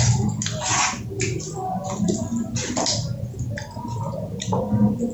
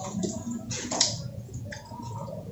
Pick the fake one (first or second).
second